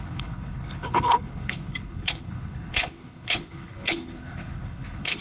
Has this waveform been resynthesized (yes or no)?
yes